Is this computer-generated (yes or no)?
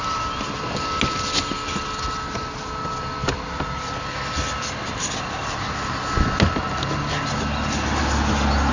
no